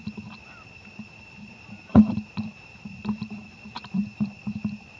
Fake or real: fake